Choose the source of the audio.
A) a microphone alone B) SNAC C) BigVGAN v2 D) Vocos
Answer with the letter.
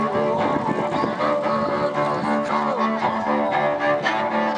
A